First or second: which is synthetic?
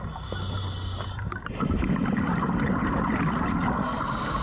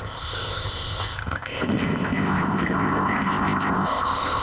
second